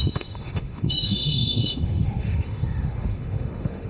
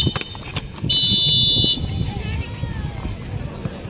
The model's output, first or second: first